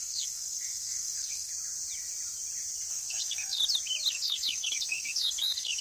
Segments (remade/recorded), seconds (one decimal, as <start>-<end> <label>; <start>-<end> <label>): 0.0-1.5 remade; 1.5-2.9 recorded; 2.9-3.6 remade; 3.6-4.1 recorded; 4.1-5.8 remade